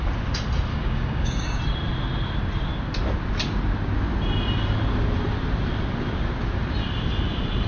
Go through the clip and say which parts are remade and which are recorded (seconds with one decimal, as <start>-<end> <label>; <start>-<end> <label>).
0.0-0.7 recorded; 0.7-1.6 remade; 1.6-7.7 recorded